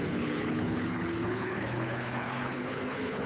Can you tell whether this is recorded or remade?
remade